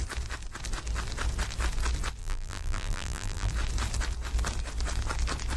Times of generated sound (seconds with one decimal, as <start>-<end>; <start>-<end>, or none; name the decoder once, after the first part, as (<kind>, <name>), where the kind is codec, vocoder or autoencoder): 2.2-3.5 (vocoder, BigVGAN v2)